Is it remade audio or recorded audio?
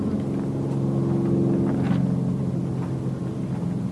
recorded